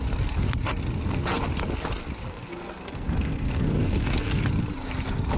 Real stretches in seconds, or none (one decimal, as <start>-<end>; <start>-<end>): 0.0-2.3; 4.4-5.4

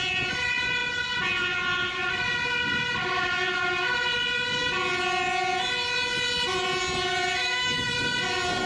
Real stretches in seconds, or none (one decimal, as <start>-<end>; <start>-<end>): 0.0-7.4; 7.9-8.7

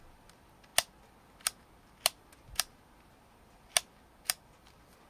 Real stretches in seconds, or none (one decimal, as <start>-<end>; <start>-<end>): 0.0-5.1

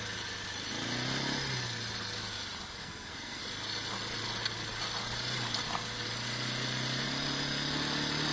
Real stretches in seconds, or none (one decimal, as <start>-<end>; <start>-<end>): 0.0-2.8; 3.4-8.3

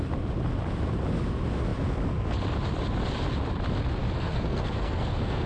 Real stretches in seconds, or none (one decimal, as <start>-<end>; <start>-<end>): 0.0-4.0

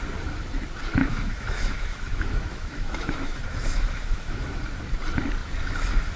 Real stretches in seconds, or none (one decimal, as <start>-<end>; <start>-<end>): 0.0-1.0; 4.6-6.2

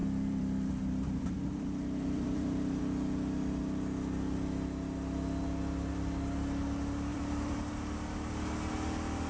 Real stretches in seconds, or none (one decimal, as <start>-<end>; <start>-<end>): 2.8-7.1; 7.7-9.3